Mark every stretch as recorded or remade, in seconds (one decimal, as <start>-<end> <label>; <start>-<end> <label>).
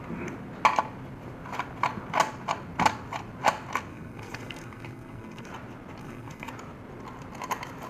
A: 0.0-3.9 recorded; 3.9-5.5 remade; 5.5-6.0 recorded; 6.0-6.5 remade; 6.5-7.9 recorded